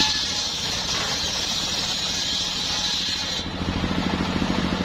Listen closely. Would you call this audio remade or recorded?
recorded